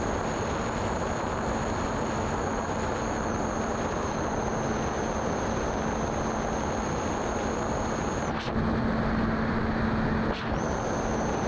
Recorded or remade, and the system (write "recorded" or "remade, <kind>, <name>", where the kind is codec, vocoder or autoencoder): recorded